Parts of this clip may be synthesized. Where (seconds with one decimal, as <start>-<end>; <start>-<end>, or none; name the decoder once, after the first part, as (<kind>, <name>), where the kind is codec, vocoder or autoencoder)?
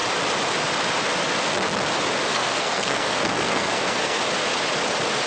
2.3-4.2 (codec, SNAC)